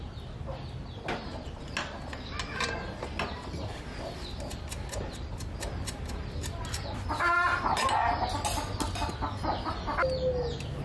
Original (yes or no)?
yes